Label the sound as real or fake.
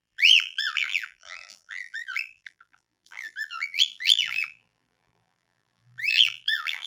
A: fake